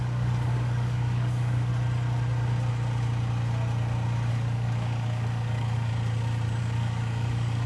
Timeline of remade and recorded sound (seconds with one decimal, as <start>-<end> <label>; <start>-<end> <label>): 0.0-1.7 remade; 1.7-4.3 recorded; 4.3-5.9 remade; 5.9-6.6 recorded; 6.6-7.7 remade